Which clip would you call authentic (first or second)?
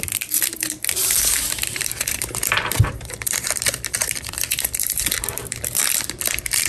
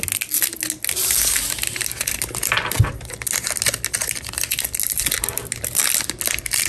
second